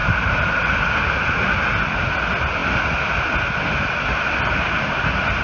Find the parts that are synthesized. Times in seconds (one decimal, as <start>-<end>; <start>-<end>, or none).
none